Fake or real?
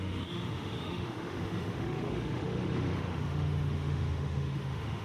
fake